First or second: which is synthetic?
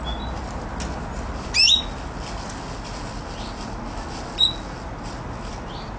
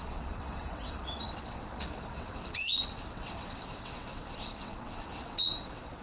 second